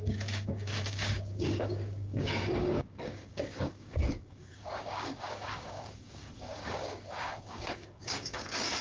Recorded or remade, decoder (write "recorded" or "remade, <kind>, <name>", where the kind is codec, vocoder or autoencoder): remade, codec, DAC